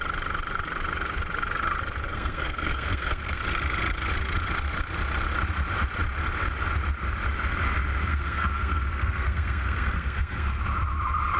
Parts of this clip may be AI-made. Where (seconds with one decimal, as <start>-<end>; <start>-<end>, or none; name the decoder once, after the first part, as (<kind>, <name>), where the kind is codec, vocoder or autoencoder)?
2.1-3.4 (codec, SNAC); 8.1-10.6

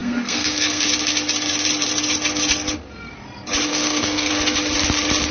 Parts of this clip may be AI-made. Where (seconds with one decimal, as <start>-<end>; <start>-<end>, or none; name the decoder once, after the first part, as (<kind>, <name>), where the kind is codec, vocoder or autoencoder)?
0.0-0.8 (codec, SNAC); 3.7-4.3

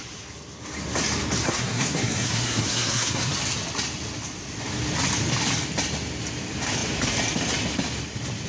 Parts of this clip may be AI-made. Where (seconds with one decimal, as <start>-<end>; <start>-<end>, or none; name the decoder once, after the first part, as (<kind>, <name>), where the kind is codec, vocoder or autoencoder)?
1.4-3.3 (codec, SNAC)

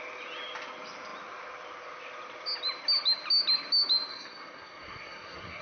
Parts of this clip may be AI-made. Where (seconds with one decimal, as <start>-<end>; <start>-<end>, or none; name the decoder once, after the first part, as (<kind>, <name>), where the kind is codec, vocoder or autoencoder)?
4.1-5.6 (codec, SNAC)

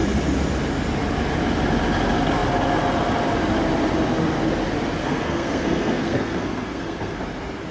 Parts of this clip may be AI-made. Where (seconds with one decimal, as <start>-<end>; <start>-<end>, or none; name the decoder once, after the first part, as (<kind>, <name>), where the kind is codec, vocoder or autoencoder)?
5.0-7.2 (codec, SNAC)